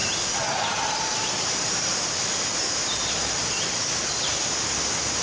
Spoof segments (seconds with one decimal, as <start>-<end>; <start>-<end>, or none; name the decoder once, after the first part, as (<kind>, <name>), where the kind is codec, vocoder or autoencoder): none